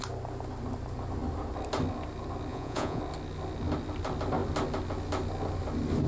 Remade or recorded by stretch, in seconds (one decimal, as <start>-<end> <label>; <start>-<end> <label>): 0.0-2.5 recorded; 2.5-3.0 remade; 3.0-6.1 recorded